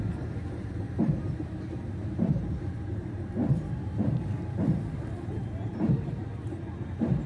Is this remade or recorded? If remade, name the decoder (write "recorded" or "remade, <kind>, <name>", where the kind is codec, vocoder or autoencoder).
remade, vocoder, BigVGAN v2